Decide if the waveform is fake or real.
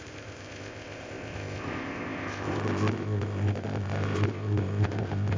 fake